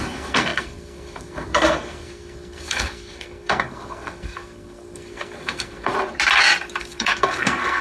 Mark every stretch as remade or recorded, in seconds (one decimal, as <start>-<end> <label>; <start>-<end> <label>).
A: 0.0-5.9 remade; 5.9-6.8 recorded; 6.8-7.8 remade